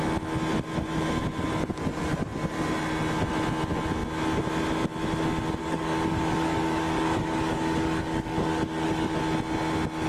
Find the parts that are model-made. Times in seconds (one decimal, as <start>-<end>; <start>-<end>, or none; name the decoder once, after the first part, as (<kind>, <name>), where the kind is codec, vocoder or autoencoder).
5.6-9.2 (codec, DAC)